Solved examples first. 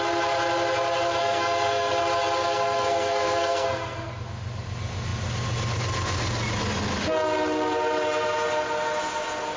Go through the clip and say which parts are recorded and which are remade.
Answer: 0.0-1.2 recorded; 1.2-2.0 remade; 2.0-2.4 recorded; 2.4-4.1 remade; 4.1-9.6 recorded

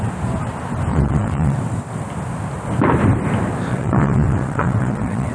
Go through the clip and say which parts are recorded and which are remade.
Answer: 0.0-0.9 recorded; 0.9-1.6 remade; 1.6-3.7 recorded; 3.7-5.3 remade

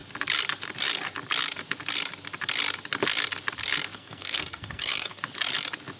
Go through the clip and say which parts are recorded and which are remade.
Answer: 0.0-3.9 recorded; 3.9-5.2 remade; 5.2-6.0 recorded

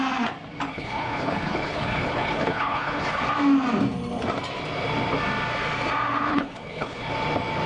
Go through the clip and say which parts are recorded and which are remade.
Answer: 0.0-0.7 recorded; 0.7-3.2 remade; 3.2-6.3 recorded; 6.3-7.1 remade; 7.1-7.7 recorded

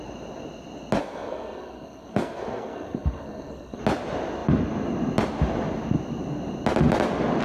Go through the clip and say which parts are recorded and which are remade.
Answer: 0.0-1.0 recorded; 1.0-3.8 remade; 3.8-7.4 recorded

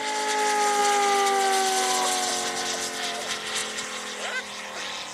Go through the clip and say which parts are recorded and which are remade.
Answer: 0.0-5.1 recorded